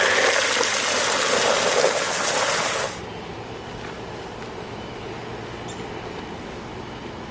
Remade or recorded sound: recorded